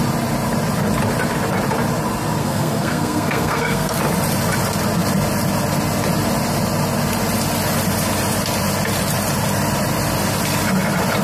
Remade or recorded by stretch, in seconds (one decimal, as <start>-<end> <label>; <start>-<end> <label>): 0.0-2.4 recorded; 2.4-4.0 remade; 4.0-11.2 recorded